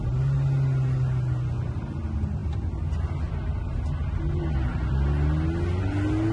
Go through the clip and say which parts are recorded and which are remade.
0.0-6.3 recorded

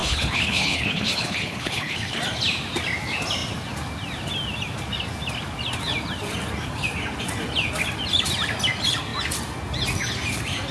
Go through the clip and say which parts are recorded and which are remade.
0.0-2.2 remade; 2.2-10.7 recorded